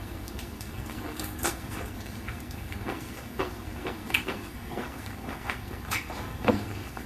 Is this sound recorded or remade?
remade